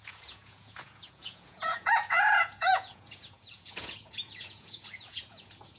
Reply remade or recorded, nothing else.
remade